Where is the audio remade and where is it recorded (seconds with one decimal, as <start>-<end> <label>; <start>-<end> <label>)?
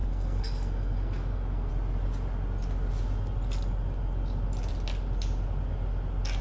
0.0-1.7 remade; 1.7-6.4 recorded